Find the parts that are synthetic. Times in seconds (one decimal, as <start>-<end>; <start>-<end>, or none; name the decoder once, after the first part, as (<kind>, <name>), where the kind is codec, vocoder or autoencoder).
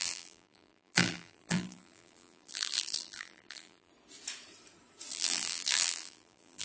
0.0-3.9 (vocoder, BigVGAN v2); 5.1-6.6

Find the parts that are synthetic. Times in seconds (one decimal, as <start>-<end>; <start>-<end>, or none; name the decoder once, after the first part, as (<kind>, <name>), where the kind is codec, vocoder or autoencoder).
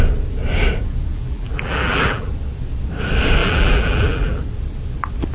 1.1-2.3 (vocoder, BigVGAN v2); 3.4-4.4